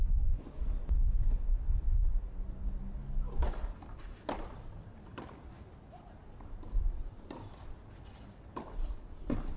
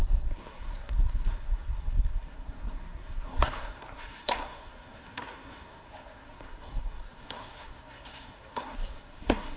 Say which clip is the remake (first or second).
second